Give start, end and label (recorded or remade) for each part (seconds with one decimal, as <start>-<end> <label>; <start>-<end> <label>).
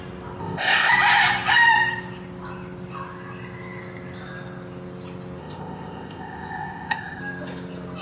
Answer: 0.0-0.4 recorded; 0.4-0.9 remade; 0.9-5.4 recorded; 5.4-7.2 remade; 7.2-8.0 recorded